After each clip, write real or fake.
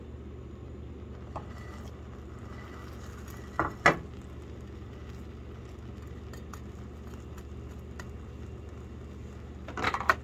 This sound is real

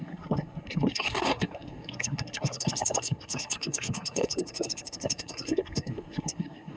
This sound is fake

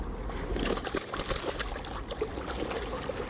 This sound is real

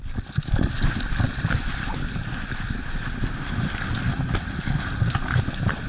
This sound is real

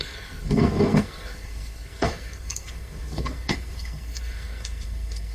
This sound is fake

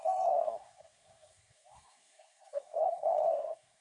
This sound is fake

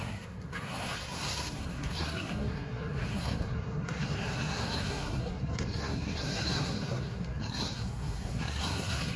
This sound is fake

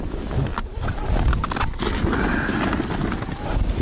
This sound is real